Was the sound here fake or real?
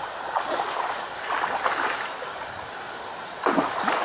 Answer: real